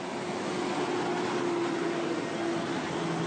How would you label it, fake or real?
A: real